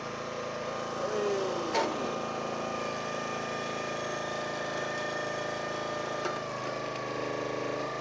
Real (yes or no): yes